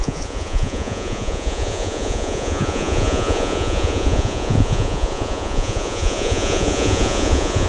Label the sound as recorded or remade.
remade